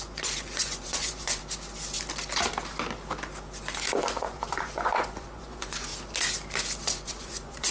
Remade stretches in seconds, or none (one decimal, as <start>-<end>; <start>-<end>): 0.0-1.4; 4.0-5.9; 6.8-7.7